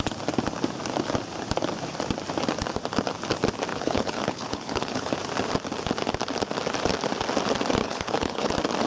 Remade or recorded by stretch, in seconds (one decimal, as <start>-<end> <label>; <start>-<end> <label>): 0.0-3.7 recorded; 3.7-5.1 remade; 5.1-7.8 recorded; 7.8-8.5 remade; 8.5-8.9 recorded